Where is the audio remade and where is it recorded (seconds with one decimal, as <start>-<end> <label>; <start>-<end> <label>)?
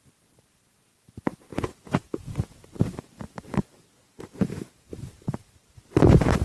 0.0-6.4 remade